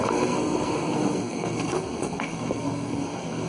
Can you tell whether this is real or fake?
fake